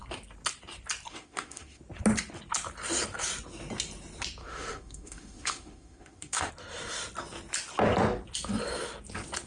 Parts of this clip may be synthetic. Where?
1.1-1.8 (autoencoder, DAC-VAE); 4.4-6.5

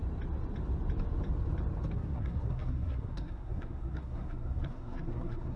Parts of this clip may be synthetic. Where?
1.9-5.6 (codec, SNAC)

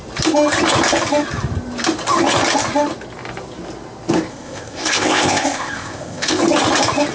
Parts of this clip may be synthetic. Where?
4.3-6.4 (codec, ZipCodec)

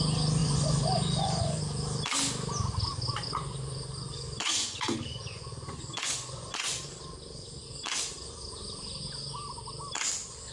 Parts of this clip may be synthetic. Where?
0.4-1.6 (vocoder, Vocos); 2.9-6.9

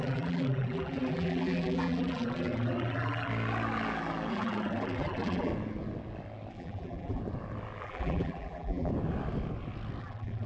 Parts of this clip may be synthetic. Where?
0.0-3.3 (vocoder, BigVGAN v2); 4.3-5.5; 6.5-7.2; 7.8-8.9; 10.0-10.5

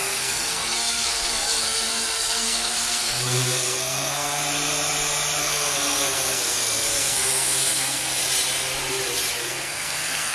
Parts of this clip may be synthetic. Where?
0.0-4.4 (codec, SNAC); 5.4-8.2; 9.3-10.3

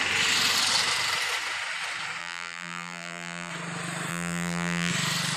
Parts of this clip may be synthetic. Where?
2.2-3.5 (vocoder, BigVGAN v2); 4.1-4.9